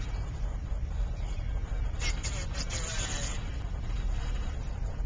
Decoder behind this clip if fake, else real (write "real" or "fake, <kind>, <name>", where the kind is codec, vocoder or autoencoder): real